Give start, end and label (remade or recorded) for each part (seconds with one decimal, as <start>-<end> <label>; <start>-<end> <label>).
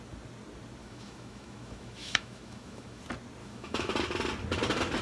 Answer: 0.0-0.8 recorded; 0.8-3.0 remade; 3.0-3.4 recorded; 3.4-3.9 remade; 3.9-5.0 recorded